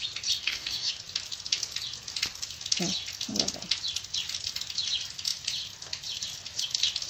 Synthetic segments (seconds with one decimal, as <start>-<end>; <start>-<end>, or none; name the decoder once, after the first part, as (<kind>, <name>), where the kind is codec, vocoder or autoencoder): 0.4-0.9 (codec, DAC)